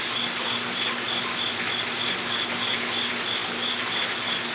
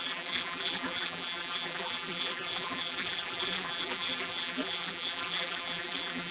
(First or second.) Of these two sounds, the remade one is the second